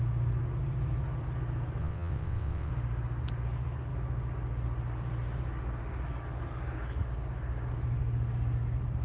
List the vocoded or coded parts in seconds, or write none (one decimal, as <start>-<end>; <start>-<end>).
1.8-2.7